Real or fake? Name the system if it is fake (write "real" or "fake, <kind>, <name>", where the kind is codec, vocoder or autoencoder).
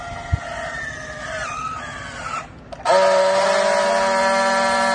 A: real